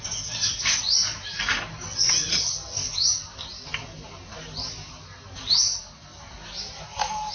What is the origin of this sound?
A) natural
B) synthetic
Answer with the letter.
A